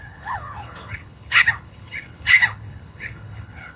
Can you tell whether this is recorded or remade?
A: remade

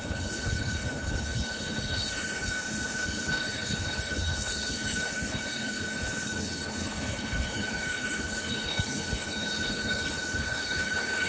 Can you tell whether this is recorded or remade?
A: remade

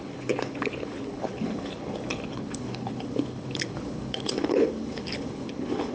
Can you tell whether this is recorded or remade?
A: remade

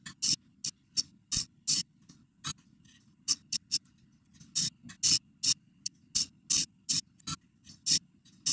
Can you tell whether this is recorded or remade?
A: recorded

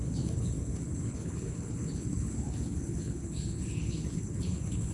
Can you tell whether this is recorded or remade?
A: remade